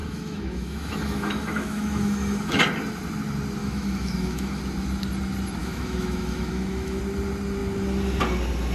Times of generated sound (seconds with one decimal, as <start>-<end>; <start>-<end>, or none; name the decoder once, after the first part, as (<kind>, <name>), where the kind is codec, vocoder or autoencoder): 0.0-2.6 (autoencoder, DAC-VAE); 3.6-4.6; 5.6-7.0